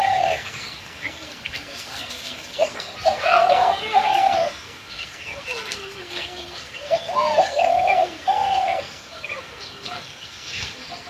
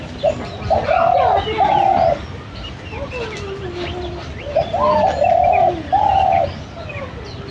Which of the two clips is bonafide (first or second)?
second